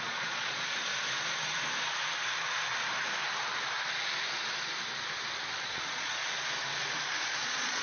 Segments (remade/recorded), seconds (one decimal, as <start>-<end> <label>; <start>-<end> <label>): 0.0-0.9 remade; 0.9-5.6 recorded; 5.6-6.2 remade; 6.2-7.2 recorded; 7.2-7.8 remade